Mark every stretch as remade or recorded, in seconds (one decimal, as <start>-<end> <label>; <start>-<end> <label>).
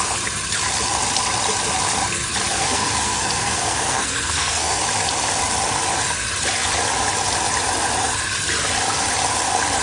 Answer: 0.0-2.5 recorded; 2.5-4.8 remade; 4.8-9.8 recorded